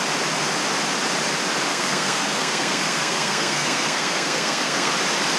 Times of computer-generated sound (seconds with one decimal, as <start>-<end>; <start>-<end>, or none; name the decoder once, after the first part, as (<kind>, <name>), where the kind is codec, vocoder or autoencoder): 1.7-4.9 (codec, SNAC)